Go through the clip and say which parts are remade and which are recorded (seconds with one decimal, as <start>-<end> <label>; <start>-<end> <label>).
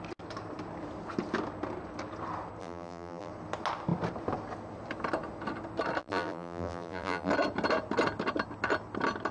0.0-2.6 recorded; 2.6-3.3 remade; 3.3-6.0 recorded; 6.0-7.3 remade; 7.3-9.3 recorded